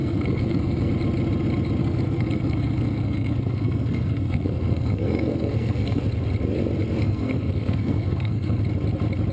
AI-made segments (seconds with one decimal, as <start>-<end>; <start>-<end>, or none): 0.0-0.9; 1.8-6.0; 7.0-8.6